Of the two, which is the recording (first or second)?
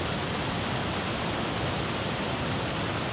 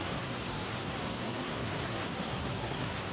first